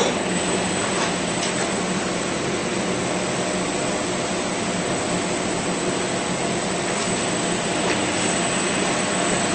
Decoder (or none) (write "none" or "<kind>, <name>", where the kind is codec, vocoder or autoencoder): none